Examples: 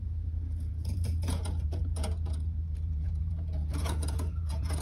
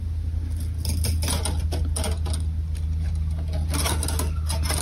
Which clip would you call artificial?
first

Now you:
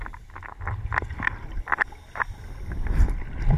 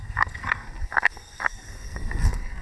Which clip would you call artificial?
second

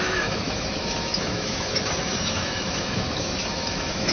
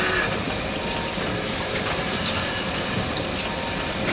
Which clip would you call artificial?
first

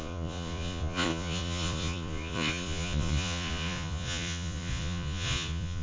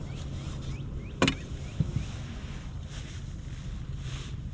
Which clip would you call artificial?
first